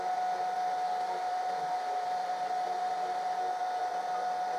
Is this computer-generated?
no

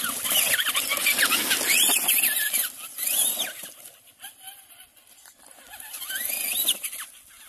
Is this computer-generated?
no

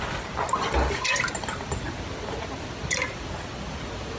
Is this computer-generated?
no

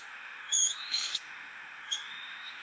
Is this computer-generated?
yes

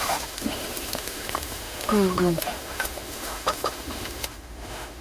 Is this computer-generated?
yes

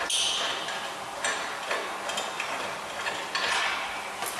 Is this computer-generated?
no